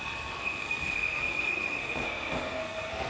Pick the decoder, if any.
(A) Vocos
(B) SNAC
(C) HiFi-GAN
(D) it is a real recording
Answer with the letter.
B